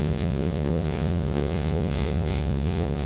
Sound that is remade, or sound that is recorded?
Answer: remade